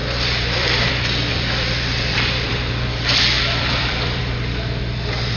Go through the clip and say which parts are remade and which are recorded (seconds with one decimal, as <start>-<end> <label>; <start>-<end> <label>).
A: 0.0-0.9 remade; 0.9-1.3 recorded; 1.3-4.2 remade; 4.2-5.4 recorded